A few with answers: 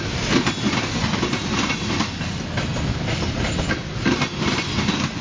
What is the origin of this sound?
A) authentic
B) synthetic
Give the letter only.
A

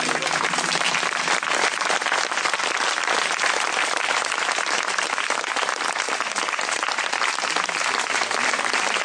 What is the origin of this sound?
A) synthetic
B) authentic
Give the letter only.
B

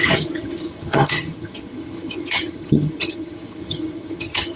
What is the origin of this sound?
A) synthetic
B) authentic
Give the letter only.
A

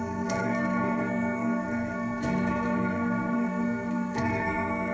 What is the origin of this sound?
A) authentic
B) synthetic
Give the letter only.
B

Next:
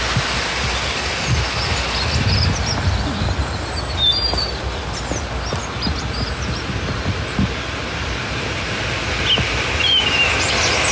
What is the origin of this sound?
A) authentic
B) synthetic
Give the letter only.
A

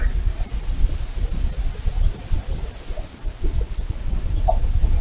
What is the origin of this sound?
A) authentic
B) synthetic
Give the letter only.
A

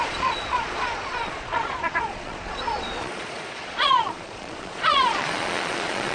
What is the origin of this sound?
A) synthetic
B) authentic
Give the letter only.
A